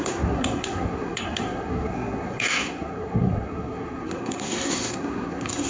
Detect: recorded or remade remade